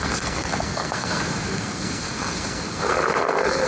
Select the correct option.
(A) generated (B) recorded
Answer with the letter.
A